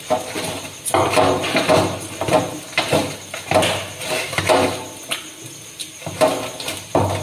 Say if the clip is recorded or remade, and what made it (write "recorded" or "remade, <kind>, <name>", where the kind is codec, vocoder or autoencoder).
recorded